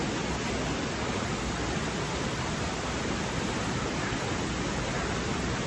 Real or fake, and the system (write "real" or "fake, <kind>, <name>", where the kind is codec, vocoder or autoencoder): real